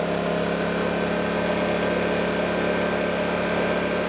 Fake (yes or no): no